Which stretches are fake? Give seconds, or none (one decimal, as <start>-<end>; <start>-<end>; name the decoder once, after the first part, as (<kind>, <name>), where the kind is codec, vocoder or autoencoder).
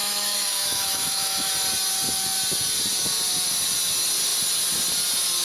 0.0-1.5 (autoencoder, DAC-VAE)